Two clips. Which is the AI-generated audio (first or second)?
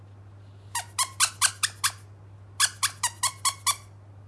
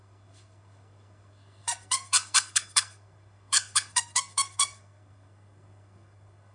second